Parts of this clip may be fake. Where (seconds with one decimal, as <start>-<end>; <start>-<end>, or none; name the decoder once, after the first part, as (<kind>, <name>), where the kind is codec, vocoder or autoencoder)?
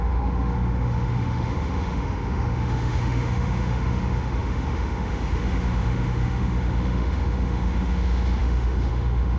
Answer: 0.0-9.4 (autoencoder, DAC-VAE)